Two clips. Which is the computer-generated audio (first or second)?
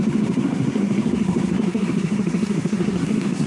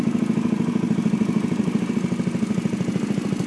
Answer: first